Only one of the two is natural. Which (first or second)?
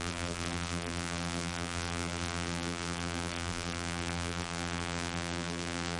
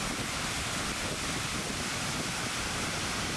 second